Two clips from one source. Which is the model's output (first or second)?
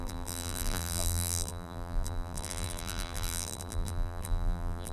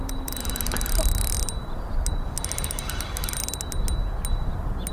first